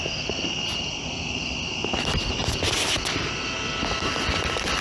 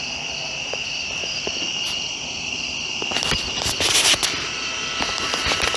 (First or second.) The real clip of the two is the first